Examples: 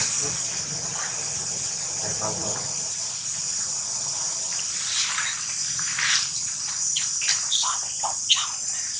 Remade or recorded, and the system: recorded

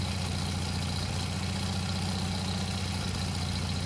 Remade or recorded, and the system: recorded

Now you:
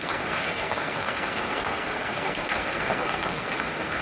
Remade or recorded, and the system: remade, codec, SNAC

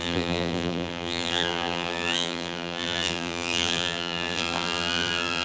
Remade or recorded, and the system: remade, vocoder, BigVGAN v2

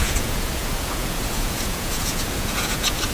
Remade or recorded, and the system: remade, vocoder, Vocos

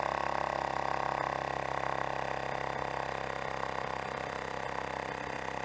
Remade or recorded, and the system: recorded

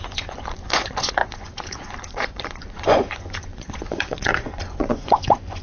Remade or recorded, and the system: remade, vocoder, Vocos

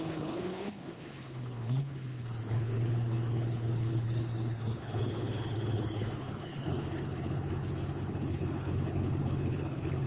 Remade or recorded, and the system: remade, codec, HILCodec